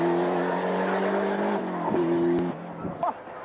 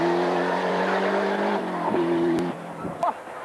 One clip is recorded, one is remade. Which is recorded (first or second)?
first